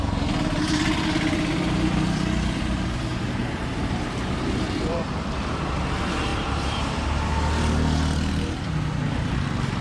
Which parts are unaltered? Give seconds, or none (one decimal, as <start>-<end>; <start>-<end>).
0.0-3.1; 5.1-6.3; 6.9-9.8